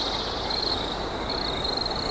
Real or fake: real